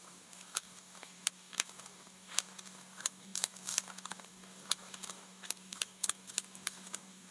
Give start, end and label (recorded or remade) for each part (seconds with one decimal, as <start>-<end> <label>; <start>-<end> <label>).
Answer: 0.0-7.3 remade